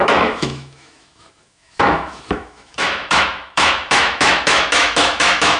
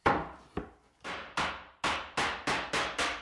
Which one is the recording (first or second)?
second